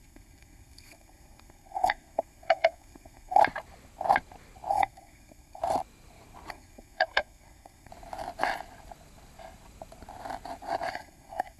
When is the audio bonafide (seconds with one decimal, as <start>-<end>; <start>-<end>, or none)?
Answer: 3.4-4.7; 5.6-6.5; 7.9-10.9